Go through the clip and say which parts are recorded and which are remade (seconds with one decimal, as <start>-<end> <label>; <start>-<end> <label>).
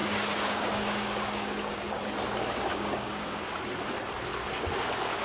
0.0-2.0 remade; 2.0-2.7 recorded; 2.7-3.6 remade; 3.6-5.2 recorded